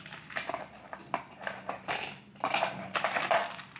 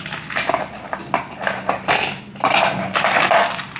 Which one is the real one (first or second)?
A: second